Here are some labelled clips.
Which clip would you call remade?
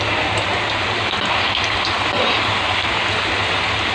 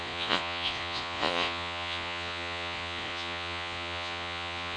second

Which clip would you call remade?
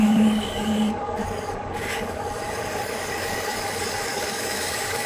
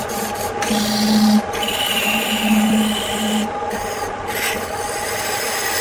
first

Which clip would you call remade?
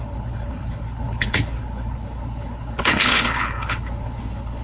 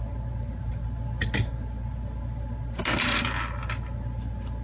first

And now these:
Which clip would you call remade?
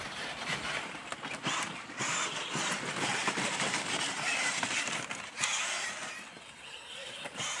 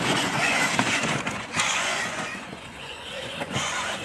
second